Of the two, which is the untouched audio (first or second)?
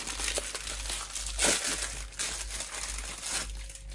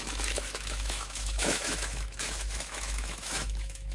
first